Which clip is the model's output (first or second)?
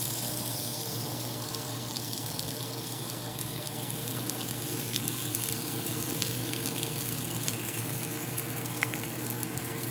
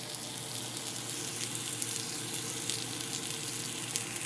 first